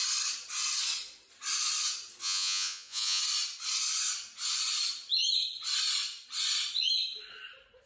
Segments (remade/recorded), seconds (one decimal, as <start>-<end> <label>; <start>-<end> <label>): 0.0-2.2 recorded; 2.2-3.2 remade; 3.2-7.9 recorded